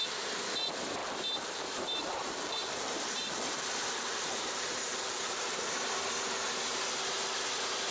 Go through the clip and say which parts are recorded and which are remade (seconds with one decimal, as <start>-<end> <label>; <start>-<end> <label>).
0.0-1.0 recorded; 1.0-5.7 remade; 5.7-7.9 recorded